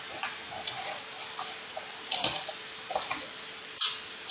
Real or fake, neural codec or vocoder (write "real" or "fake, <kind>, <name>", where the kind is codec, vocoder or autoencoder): fake, vocoder, BigVGAN v2